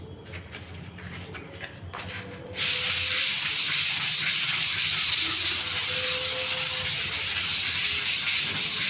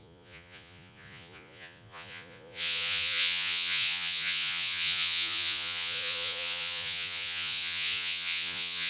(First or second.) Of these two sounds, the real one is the first